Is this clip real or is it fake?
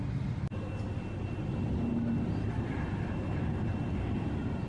real